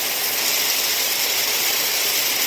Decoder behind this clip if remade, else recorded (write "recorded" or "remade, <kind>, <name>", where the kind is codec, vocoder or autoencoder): remade, vocoder, BigVGAN v2